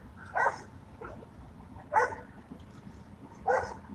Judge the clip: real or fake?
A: real